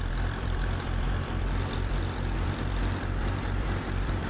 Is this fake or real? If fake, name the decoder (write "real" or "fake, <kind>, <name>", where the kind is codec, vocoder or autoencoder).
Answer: fake, vocoder, BigVGAN v2